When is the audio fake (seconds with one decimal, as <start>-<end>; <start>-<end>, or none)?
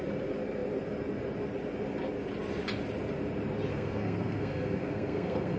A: 3.7-5.6